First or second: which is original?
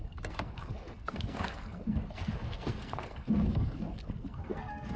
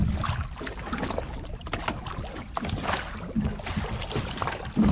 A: second